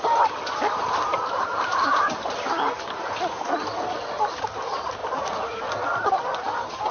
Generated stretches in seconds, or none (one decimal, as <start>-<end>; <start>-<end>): 1.1-2.0; 5.0-5.6